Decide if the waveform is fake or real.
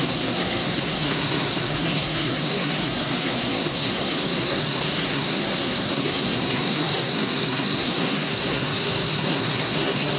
fake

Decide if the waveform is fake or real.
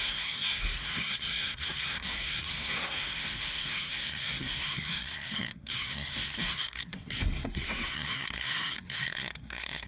fake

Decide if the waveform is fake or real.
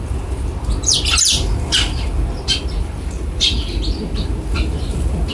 real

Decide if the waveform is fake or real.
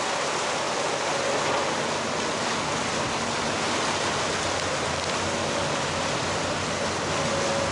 real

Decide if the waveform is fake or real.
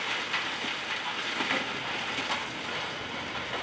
real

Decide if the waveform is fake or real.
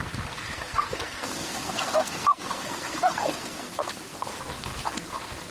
fake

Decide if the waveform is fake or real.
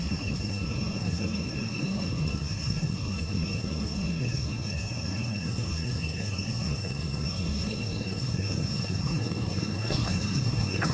fake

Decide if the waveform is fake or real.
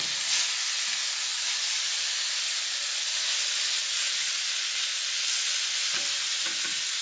real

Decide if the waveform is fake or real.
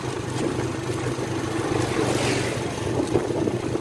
real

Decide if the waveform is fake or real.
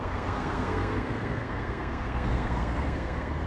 fake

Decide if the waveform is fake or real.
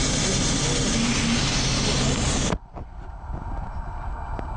real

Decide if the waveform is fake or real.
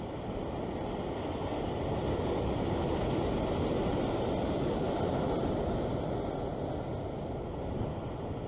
real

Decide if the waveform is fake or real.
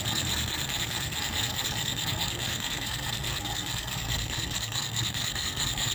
fake